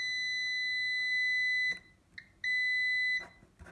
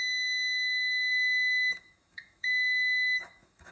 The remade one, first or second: second